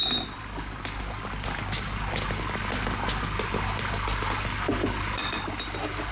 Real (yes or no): yes